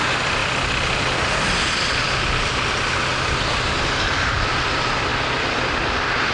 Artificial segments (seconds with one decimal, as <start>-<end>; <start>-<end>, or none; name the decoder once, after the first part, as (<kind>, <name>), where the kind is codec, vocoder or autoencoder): 0.0-0.4 (vocoder, BigVGAN v2); 4.2-5.1